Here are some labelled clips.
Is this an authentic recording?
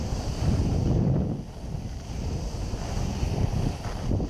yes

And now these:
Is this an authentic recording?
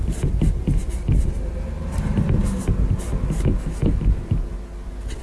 yes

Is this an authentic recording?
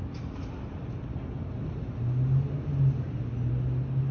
yes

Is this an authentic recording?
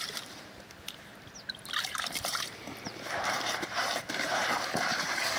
no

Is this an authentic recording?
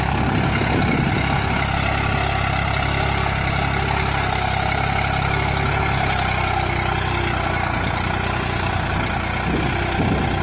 yes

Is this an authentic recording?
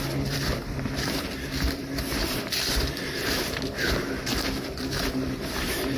no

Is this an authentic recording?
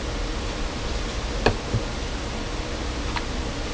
yes